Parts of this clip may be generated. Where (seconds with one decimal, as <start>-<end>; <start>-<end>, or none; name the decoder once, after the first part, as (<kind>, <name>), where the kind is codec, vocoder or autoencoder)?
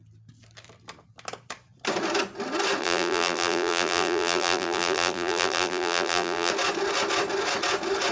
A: 2.8-6.5 (vocoder, BigVGAN v2)